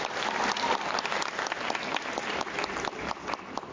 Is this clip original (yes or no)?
yes